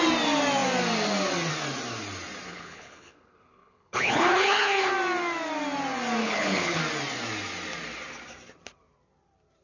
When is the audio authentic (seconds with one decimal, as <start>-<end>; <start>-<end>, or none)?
0.0-2.5; 4.9-6.2; 6.8-9.6